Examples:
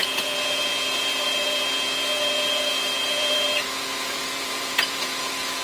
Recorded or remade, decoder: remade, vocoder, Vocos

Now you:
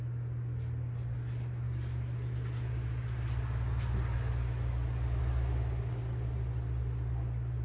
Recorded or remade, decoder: recorded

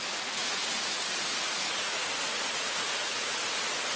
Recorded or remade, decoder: remade, vocoder, Vocos